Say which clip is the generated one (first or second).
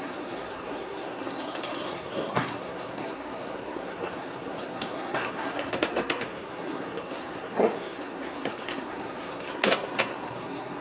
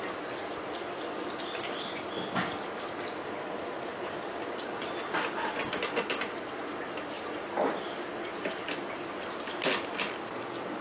first